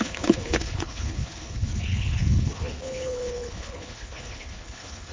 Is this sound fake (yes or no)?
yes